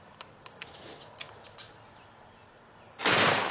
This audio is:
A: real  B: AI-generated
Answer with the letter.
A